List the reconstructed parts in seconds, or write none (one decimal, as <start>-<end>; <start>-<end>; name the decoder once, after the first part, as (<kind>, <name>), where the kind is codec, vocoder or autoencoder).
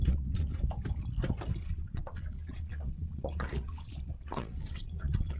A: 0.0-0.5 (vocoder, Vocos); 1.6-5.4